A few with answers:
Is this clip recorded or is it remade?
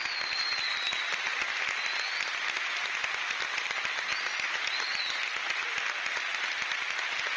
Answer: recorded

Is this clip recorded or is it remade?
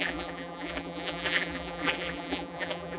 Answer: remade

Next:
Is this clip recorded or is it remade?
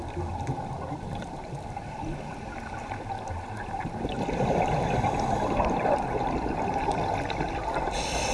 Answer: recorded